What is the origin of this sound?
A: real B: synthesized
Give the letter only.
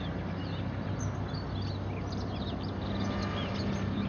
A